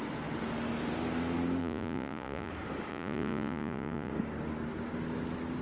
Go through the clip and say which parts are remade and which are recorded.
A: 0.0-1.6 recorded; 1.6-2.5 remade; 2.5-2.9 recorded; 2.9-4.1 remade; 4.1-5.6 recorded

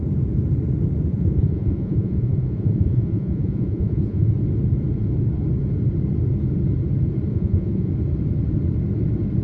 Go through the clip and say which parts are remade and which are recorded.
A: 0.0-1.1 recorded; 1.1-4.3 remade; 4.3-7.3 recorded; 7.3-7.9 remade; 7.9-9.4 recorded

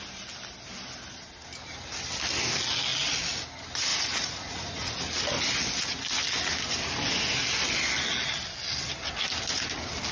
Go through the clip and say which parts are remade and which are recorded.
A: 0.0-3.9 recorded; 3.9-5.0 remade; 5.0-10.1 recorded

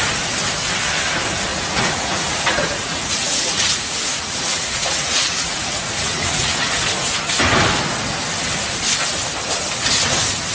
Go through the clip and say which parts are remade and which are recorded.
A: 0.0-1.5 recorded; 1.5-6.7 remade; 6.7-10.5 recorded

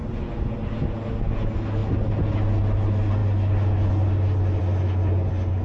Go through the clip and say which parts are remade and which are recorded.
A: 0.0-5.6 recorded